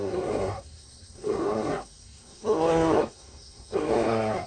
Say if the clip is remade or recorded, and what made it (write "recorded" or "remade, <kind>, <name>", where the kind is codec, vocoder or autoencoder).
remade, codec, SNAC